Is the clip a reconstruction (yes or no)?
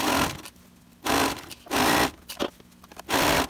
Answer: no